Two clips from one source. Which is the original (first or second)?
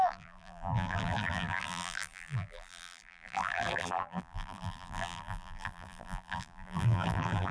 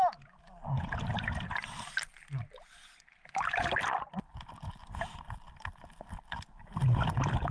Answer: second